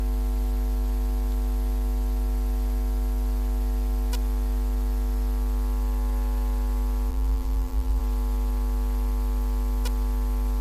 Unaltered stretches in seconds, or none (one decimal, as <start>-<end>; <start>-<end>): 0.0-7.1; 8.0-10.6